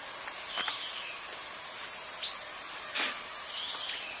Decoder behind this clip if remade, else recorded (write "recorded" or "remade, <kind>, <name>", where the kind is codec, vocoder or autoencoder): recorded